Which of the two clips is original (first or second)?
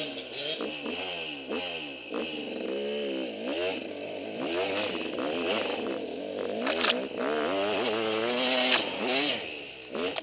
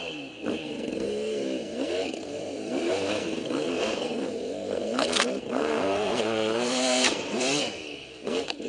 first